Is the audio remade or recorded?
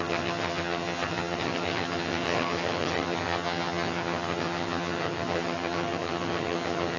remade